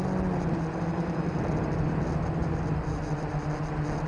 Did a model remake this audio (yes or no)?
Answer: no